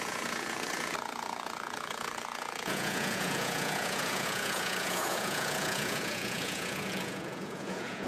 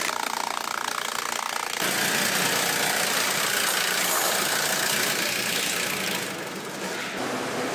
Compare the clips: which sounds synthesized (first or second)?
first